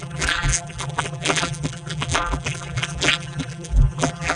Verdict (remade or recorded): remade